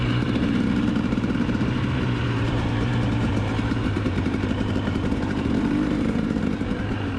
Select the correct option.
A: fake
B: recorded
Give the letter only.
A